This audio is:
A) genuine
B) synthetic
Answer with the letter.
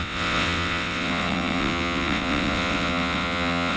B